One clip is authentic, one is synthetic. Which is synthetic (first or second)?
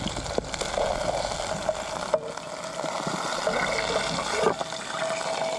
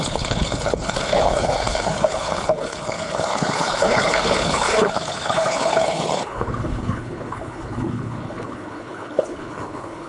second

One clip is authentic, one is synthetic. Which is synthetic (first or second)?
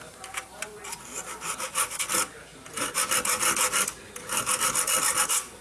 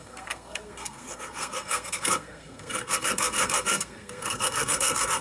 second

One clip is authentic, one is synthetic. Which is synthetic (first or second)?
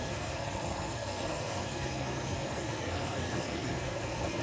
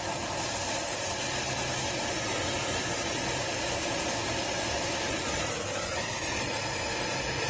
first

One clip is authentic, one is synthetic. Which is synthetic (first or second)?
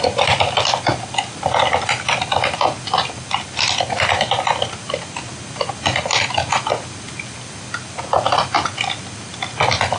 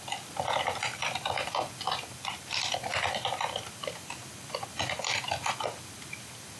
second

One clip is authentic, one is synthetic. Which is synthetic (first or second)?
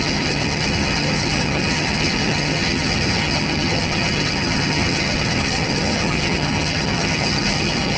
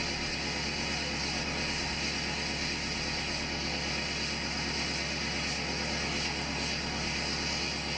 first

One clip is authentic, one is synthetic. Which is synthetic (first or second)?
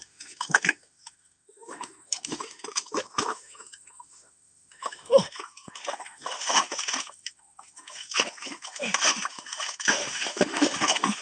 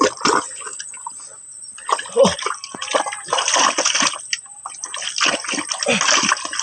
first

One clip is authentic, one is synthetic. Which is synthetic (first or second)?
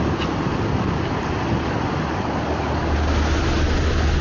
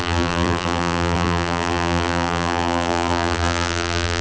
second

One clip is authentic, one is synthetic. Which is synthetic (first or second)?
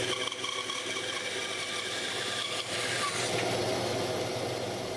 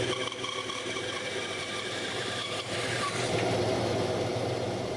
second